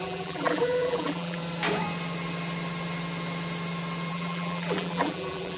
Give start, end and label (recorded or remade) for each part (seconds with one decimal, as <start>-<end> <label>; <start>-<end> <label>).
0.0-1.4 remade; 1.4-4.1 recorded; 4.1-5.6 remade